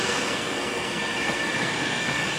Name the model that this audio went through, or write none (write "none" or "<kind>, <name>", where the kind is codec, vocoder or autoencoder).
codec, SNAC